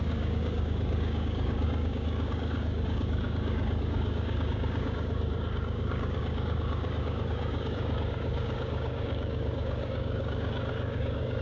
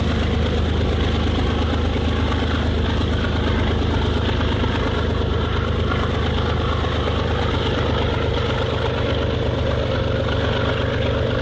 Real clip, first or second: second